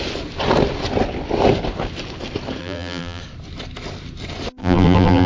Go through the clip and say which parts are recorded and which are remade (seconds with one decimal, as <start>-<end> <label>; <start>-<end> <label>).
0.0-2.6 recorded; 2.6-3.2 remade; 3.2-4.6 recorded; 4.6-5.3 remade